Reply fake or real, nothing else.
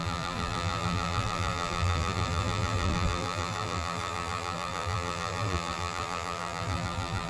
fake